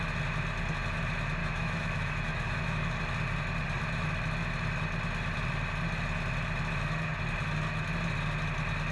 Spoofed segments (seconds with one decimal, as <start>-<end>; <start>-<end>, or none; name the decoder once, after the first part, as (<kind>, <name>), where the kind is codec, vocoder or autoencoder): 1.4-3.0 (autoencoder, DAC-VAE)